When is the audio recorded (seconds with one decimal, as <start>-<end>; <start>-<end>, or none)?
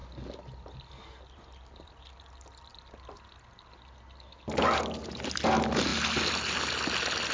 0.0-7.3